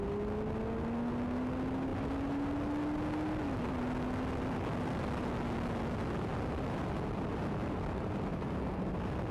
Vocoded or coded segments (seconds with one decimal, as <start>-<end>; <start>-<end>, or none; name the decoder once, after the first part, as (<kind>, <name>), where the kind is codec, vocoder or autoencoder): 6.3-6.9 (vocoder, BigVGAN v2); 8.3-8.9